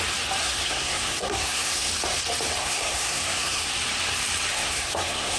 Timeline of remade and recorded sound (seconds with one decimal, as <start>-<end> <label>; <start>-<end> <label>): 0.0-0.4 recorded; 0.4-1.9 remade; 1.9-2.6 recorded; 2.6-3.7 remade; 3.7-4.5 recorded; 4.5-5.4 remade